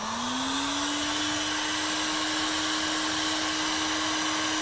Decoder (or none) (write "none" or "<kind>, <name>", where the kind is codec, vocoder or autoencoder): none